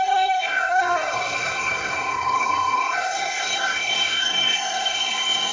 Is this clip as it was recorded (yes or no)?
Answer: no